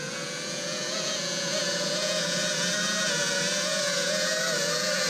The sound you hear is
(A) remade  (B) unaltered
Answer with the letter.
A